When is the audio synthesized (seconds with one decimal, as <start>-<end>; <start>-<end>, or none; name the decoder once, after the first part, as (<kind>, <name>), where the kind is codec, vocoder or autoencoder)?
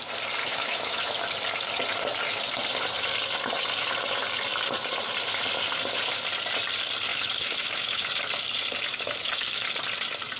0.4-1.1 (autoencoder, DAC-VAE); 7.1-8.1; 8.9-9.7